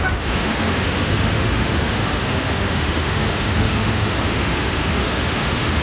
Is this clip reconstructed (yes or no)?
yes